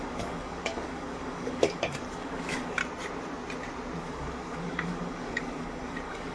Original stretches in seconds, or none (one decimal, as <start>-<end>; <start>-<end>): 2.8-4.0